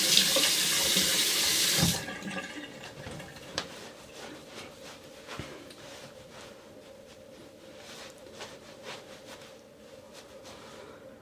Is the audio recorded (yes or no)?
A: no